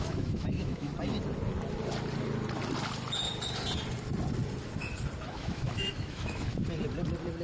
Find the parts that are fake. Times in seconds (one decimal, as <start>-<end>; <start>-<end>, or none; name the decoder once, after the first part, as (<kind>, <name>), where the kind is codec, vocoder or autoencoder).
0.0-0.9 (autoencoder, DAC-VAE); 5.3-6.5

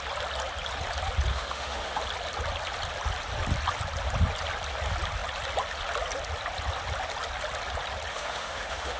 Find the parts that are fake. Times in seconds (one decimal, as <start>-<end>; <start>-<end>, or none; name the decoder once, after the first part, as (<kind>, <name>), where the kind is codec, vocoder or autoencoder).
1.3-2.0 (autoencoder, DAC-VAE); 8.1-9.0

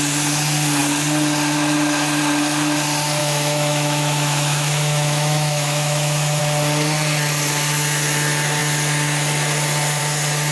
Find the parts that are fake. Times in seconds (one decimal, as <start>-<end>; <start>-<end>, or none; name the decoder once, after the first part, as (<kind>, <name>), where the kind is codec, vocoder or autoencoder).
3.2-6.4 (autoencoder, DAC-VAE)

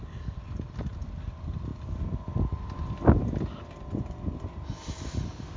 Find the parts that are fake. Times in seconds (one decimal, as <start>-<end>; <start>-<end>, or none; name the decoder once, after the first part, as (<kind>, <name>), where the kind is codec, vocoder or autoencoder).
none

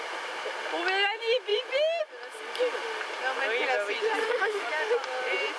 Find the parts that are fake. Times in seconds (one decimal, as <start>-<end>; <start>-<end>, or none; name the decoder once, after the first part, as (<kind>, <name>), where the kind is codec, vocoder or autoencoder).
4.2-4.7 (autoencoder, DAC-VAE)

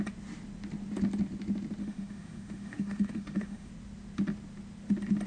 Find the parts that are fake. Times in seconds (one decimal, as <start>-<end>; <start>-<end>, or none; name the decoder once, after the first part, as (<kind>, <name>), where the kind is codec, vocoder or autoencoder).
1.8-3.7 (autoencoder, DAC-VAE)

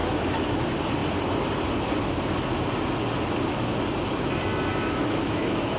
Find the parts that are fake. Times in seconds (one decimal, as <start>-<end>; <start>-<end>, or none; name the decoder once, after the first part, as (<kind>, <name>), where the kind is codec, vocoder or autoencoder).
0.0-0.6 (autoencoder, DAC-VAE); 4.7-5.8